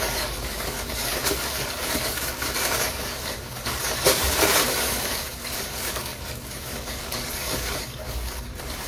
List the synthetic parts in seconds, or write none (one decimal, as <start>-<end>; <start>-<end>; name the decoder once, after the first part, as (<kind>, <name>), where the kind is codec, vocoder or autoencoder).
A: 0.0-8.9 (codec, DAC)

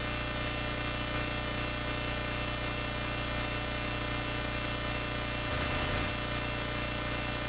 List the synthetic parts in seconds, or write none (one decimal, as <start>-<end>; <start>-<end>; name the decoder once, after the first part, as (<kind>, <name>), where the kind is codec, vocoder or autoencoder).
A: 5.5-6.1 (vocoder, Vocos)

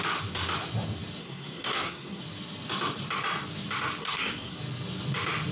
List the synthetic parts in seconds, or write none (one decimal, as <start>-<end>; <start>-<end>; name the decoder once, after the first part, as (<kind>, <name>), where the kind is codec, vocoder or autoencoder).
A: 1.2-2.2 (codec, SNAC); 4.0-4.6

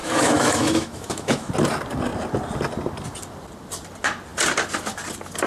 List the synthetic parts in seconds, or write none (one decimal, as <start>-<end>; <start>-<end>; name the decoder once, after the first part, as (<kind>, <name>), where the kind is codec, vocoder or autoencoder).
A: 0.0-1.5 (autoencoder, DAC-VAE)

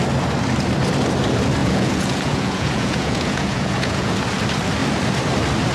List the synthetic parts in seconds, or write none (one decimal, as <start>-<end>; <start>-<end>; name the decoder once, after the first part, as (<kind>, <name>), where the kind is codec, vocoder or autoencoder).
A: 1.6-4.1 (vocoder, Vocos)